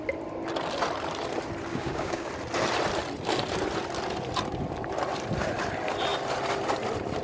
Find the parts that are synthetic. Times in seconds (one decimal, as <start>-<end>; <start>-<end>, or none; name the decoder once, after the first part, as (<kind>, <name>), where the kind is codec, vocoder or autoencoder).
1.7-2.3 (codec, DAC)